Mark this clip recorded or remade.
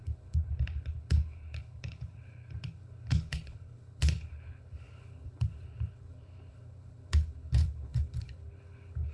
remade